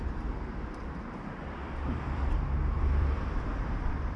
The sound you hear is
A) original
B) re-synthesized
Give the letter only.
B